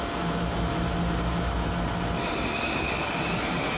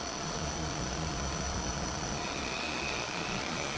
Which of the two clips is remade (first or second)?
second